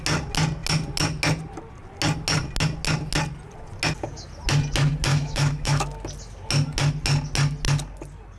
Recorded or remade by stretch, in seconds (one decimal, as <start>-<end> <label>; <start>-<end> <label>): 0.0-5.1 recorded; 5.1-5.8 remade; 5.8-8.4 recorded